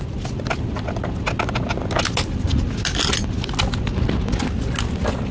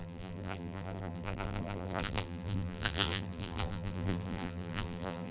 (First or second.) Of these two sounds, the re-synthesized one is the second